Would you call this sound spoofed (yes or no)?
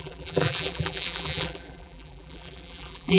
yes